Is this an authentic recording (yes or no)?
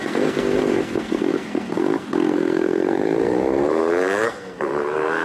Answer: no